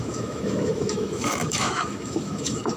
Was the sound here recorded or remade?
remade